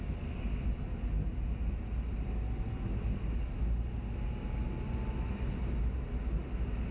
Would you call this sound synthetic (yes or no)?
no